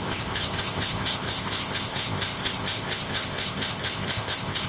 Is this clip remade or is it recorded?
remade